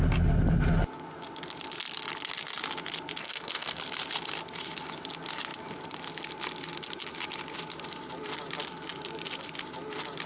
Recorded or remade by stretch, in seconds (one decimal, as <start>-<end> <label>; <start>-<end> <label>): 0.0-3.2 recorded; 3.2-3.8 remade; 3.8-10.3 recorded

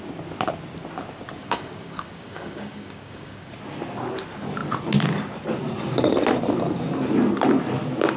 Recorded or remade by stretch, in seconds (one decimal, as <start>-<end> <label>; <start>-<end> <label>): 0.0-1.4 recorded; 1.4-3.5 remade; 3.5-8.2 recorded

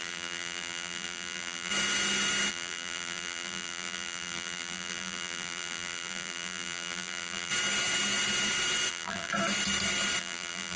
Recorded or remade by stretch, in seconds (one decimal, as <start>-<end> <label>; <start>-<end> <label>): 0.0-1.7 remade; 1.7-2.5 recorded; 2.5-7.5 remade; 7.5-8.9 recorded; 8.9-9.3 remade; 9.3-10.2 recorded; 10.2-10.8 remade

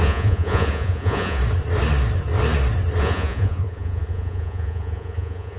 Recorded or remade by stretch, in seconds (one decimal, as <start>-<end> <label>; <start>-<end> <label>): 0.0-1.4 remade; 1.4-3.0 recorded; 3.0-5.6 remade

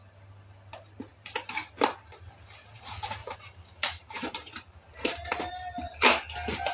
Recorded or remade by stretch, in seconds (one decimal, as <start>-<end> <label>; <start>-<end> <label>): 0.0-1.1 recorded; 1.1-2.8 remade; 2.8-3.2 recorded; 3.2-5.4 remade; 5.4-6.7 recorded

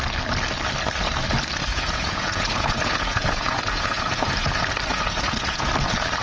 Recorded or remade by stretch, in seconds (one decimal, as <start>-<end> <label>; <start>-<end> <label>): 0.0-1.7 recorded; 1.7-4.5 remade; 4.5-4.9 recorded; 4.9-5.7 remade; 5.7-6.2 recorded

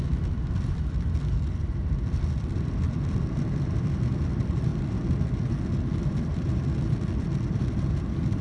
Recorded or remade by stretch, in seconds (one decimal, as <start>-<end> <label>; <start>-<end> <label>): 0.0-4.7 remade; 4.7-6.0 recorded; 6.0-8.4 remade

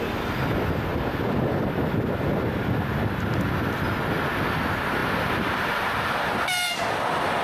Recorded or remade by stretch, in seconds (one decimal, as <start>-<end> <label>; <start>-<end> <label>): 0.0-7.4 recorded